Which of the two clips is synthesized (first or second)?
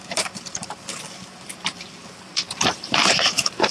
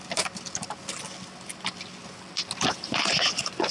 first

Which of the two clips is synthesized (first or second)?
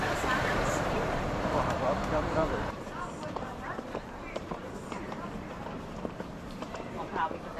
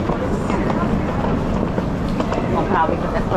first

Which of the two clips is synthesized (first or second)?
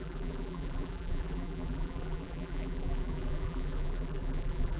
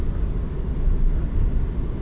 first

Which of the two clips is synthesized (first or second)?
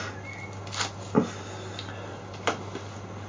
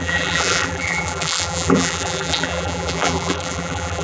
second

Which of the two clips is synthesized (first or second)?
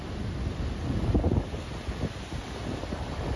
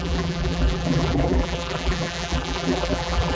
second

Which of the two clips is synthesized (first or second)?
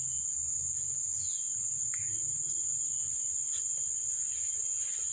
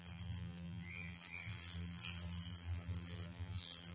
second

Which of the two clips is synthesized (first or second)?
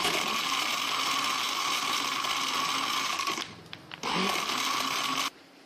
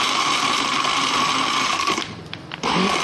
second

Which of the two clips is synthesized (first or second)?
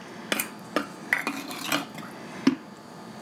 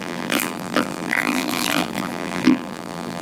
second